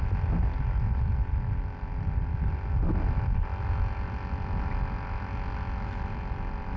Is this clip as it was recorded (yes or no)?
yes